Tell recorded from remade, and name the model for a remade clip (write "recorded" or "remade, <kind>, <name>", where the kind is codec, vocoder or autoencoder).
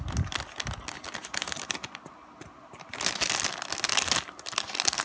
recorded